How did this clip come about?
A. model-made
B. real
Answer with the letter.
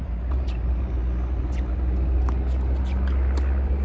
B